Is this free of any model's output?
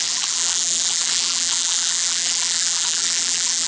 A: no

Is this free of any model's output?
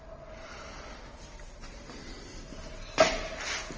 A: yes